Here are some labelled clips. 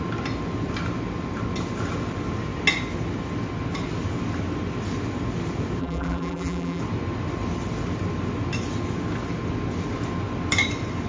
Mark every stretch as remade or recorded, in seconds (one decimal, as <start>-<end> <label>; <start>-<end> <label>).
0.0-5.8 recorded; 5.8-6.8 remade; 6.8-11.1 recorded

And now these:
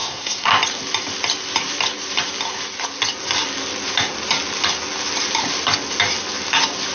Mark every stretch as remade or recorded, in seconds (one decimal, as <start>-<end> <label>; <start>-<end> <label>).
0.0-0.5 remade; 0.5-6.9 recorded

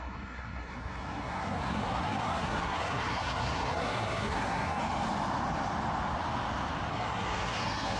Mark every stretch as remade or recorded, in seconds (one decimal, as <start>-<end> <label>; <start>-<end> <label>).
0.0-4.8 remade; 4.8-6.9 recorded; 6.9-8.0 remade

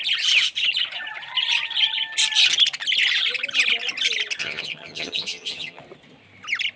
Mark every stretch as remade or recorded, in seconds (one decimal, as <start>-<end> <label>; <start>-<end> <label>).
0.0-4.4 recorded; 4.4-5.8 remade; 5.8-6.8 recorded

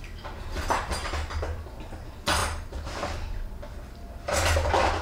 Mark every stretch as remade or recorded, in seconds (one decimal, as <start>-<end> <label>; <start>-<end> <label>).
0.0-1.0 recorded; 1.0-1.6 remade; 1.6-2.4 recorded; 2.4-3.6 remade; 3.6-5.0 recorded

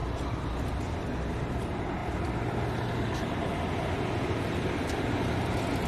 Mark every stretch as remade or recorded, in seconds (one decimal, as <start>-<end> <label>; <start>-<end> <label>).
0.0-5.9 recorded

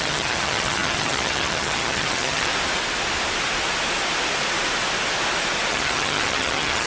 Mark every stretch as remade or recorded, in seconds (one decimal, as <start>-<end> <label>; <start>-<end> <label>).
0.0-2.5 remade; 2.5-5.7 recorded; 5.7-6.9 remade